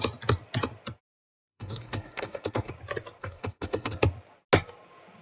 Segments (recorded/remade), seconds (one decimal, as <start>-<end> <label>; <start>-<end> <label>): 0.0-1.1 recorded; 1.1-2.7 remade; 2.7-3.2 recorded; 3.2-4.0 remade; 4.0-5.2 recorded